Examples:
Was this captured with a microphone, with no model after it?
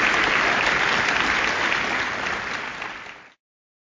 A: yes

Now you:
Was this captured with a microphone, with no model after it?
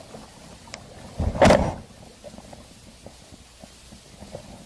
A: yes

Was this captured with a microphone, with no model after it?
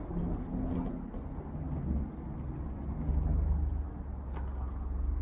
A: yes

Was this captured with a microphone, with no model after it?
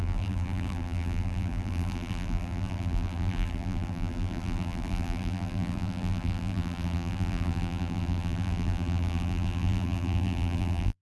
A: no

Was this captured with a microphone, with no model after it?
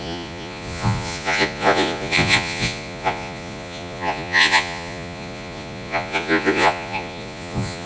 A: no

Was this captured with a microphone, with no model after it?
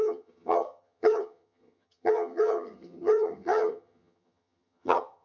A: no